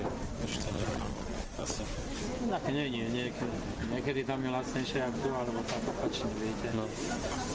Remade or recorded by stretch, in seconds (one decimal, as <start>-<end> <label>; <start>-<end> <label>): 0.0-0.5 recorded; 0.5-1.8 remade; 1.8-7.5 recorded